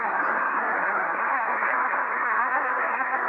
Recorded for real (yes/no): no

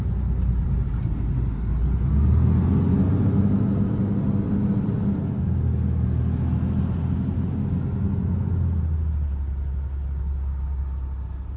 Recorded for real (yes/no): yes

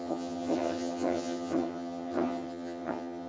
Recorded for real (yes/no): no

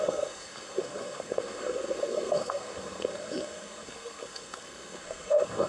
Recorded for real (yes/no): no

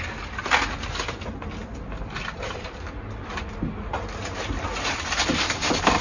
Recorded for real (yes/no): yes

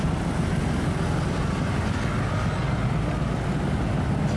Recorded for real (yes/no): yes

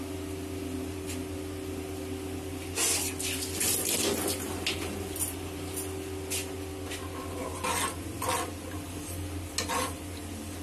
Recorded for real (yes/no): yes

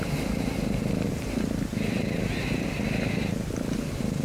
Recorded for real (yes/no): no